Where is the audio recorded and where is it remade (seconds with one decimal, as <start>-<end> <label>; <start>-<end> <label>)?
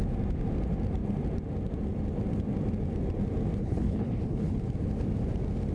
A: 0.0-3.6 recorded; 3.6-4.6 remade; 4.6-5.7 recorded